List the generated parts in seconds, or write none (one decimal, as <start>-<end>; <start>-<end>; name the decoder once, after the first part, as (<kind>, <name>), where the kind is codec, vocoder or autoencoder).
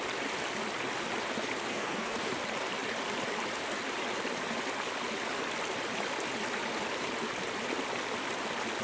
1.7-2.3 (codec, DAC)